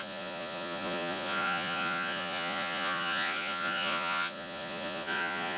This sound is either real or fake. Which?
fake